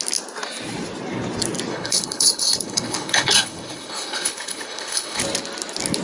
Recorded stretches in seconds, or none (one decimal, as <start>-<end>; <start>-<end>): 0.0-1.7; 5.2-6.0